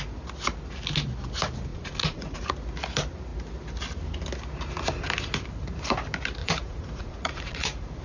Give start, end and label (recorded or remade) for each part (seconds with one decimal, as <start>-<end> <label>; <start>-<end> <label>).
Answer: 0.0-1.7 recorded; 1.7-2.5 remade; 2.5-6.4 recorded; 6.4-8.0 remade